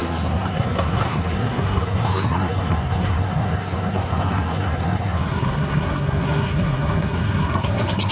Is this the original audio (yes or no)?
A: no